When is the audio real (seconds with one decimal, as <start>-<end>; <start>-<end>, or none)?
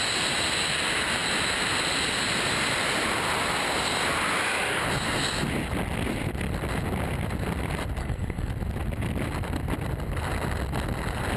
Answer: 0.0-8.0; 8.5-11.4